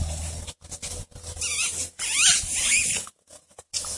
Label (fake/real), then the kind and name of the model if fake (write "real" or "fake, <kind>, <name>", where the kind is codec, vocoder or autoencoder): real